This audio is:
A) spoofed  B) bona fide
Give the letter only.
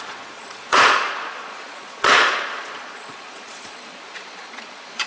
A